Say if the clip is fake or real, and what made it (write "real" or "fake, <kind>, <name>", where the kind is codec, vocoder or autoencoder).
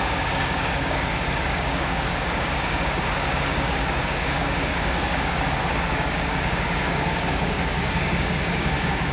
fake, codec, DAC